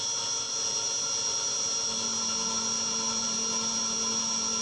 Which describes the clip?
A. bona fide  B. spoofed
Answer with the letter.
A